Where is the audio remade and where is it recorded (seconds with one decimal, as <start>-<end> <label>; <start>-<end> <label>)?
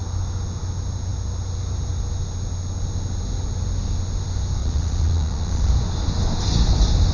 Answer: 0.0-4.6 recorded; 4.6-5.7 remade; 5.7-7.1 recorded